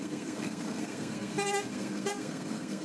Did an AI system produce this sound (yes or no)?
yes